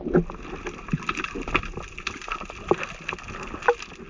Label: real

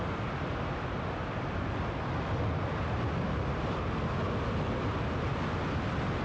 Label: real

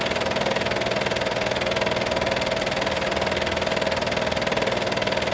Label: real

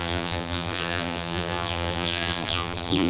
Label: fake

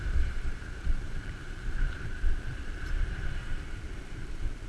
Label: fake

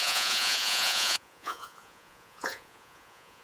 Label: fake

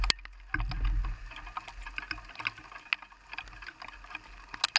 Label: real